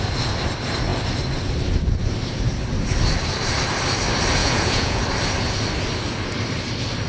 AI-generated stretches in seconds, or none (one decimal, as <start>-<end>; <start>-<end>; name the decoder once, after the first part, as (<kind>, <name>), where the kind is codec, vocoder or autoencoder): 4.4-5.0 (vocoder, Vocos)